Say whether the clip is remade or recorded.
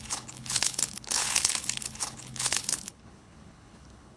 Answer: remade